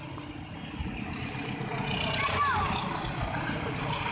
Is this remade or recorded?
recorded